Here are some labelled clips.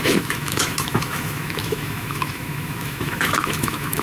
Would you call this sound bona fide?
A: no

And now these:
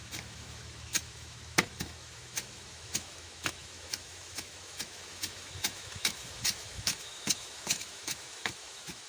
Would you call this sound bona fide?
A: no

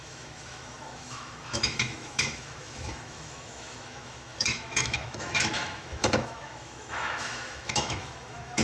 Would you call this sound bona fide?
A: no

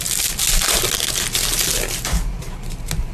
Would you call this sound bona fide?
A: yes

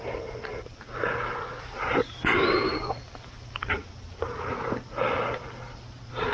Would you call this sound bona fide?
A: yes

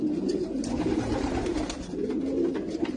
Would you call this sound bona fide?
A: yes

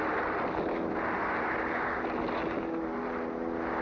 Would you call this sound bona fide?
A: yes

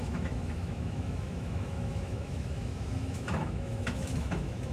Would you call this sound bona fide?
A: no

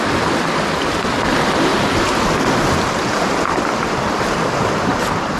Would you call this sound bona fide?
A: yes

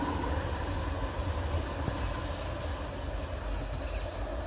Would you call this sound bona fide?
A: yes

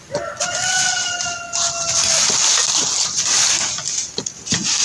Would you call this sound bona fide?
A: yes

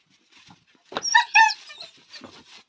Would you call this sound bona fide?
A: yes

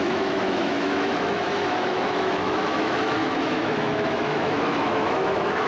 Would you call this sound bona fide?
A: no